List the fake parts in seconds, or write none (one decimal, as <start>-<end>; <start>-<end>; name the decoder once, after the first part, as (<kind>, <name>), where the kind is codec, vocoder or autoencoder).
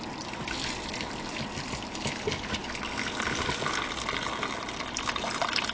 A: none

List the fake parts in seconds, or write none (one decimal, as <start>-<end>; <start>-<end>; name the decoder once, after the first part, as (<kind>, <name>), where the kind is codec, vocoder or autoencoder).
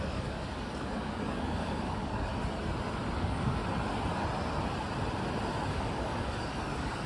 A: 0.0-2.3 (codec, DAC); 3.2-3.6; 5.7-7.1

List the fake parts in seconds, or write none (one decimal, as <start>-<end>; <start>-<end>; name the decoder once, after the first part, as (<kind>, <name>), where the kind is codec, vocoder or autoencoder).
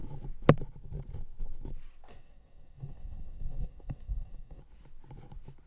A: 2.1-4.6 (codec, DAC)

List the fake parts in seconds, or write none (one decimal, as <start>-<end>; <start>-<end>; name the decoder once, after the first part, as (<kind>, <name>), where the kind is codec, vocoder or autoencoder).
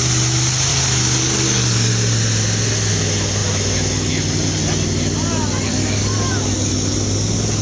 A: 0.7-1.9 (codec, DAC); 5.7-6.3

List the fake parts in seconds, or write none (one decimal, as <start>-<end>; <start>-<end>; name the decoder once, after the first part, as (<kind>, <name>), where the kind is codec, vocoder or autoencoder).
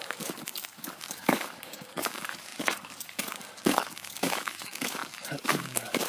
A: 0.0-6.1 (codec, DAC)